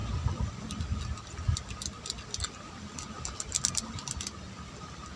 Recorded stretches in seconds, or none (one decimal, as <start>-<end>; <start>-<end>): 0.0-5.2